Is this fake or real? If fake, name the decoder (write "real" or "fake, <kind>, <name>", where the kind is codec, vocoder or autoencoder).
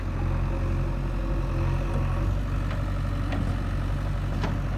real